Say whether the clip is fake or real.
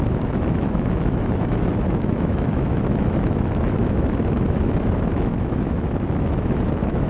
fake